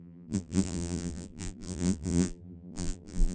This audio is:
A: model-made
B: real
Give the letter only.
A